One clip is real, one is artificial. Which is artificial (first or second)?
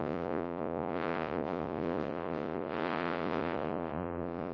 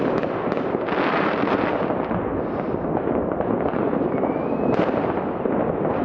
first